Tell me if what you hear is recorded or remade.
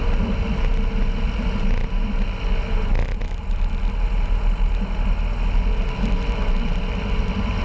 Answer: recorded